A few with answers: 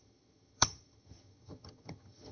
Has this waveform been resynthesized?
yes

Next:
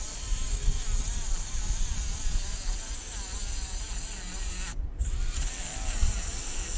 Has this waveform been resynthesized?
no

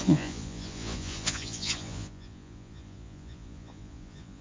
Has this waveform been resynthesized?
yes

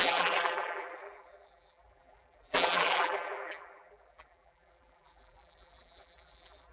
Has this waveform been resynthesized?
yes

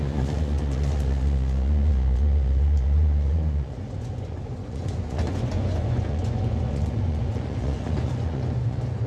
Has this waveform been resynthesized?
yes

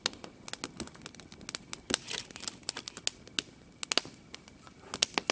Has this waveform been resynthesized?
no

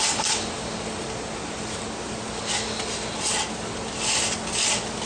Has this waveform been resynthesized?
no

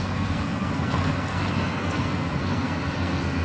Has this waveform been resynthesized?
yes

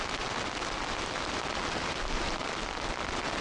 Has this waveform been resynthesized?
no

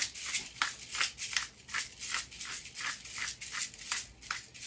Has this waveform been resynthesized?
no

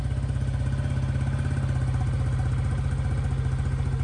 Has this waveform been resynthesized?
no